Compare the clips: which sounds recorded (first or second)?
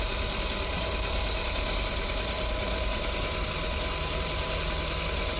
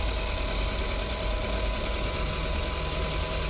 second